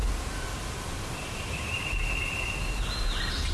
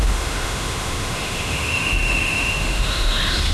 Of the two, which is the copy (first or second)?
second